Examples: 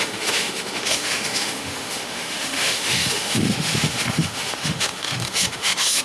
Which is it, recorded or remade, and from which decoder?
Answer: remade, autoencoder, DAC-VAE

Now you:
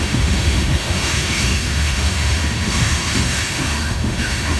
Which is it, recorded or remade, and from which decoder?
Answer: remade, autoencoder, DAC-VAE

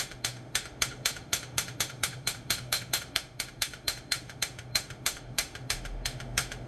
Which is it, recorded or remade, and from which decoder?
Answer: remade, autoencoder, DAC-VAE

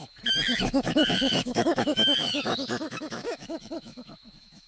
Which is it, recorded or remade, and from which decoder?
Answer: remade, autoencoder, DAC-VAE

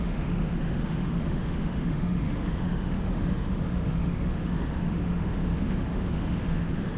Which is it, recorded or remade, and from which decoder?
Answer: remade, autoencoder, DAC-VAE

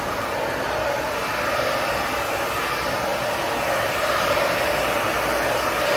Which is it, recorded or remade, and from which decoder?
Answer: recorded